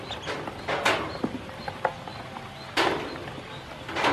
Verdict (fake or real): real